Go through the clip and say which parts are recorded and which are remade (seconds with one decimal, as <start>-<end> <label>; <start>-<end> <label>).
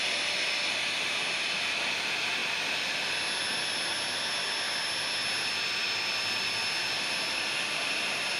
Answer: 0.0-8.4 recorded